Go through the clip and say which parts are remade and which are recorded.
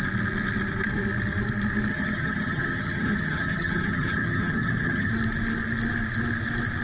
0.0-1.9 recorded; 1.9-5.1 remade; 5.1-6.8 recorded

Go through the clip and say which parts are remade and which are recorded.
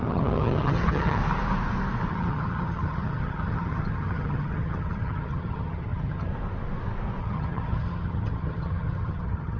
0.0-1.2 remade; 1.2-2.1 recorded; 2.1-6.3 remade; 6.3-7.2 recorded; 7.2-9.6 remade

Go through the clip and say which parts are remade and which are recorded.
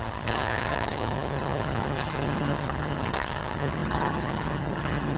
0.0-5.2 remade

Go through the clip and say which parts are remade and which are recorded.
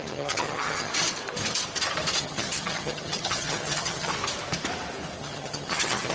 0.0-0.9 remade; 0.9-2.2 recorded; 2.2-4.1 remade; 4.1-5.2 recorded; 5.2-6.1 remade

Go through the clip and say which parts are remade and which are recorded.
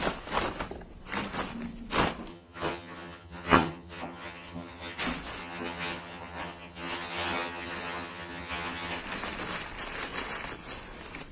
0.0-2.3 recorded; 2.3-5.0 remade; 5.0-5.4 recorded; 5.4-9.0 remade; 9.0-11.3 recorded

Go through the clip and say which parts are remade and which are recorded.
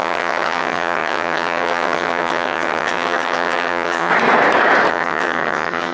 0.0-4.1 remade; 4.1-4.9 recorded; 4.9-5.9 remade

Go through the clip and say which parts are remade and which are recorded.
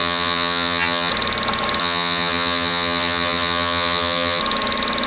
0.0-1.1 remade; 1.1-1.8 recorded; 1.8-4.4 remade; 4.4-5.1 recorded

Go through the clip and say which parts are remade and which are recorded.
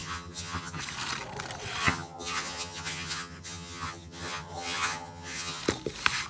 0.0-0.8 remade; 0.8-1.8 recorded; 1.8-5.6 remade; 5.6-6.3 recorded